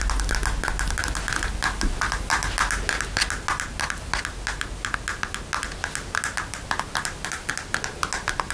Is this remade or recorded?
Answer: recorded